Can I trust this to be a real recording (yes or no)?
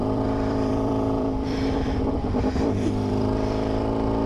no